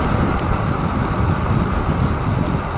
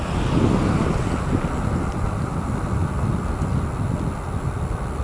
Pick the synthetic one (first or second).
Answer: first